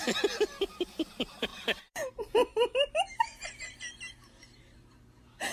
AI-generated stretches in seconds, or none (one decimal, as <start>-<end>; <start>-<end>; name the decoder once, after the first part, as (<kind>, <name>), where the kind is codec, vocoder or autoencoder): 1.5-3.6 (vocoder, BigVGAN v2)